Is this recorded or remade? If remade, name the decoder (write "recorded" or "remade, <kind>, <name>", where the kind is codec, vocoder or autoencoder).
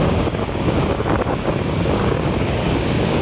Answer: remade, codec, DAC